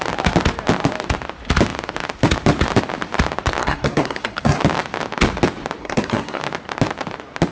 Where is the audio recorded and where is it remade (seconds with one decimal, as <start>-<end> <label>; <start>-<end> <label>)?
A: 0.0-3.6 recorded; 3.6-4.6 remade; 4.6-5.8 recorded; 5.8-6.4 remade; 6.4-7.5 recorded